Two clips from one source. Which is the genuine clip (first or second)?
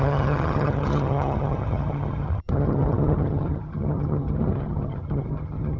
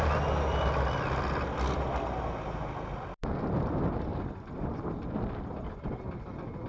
second